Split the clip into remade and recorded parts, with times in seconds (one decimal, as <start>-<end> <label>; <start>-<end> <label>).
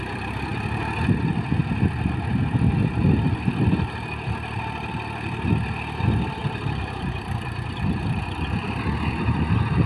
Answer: 0.0-6.4 recorded; 6.4-8.8 remade; 8.8-9.9 recorded